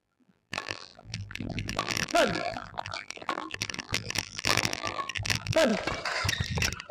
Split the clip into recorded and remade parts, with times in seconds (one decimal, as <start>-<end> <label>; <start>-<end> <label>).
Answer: 0.0-5.7 remade; 5.7-6.9 recorded